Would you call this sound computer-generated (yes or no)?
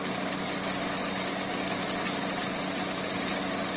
no